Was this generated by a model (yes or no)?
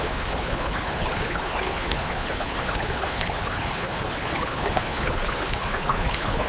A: yes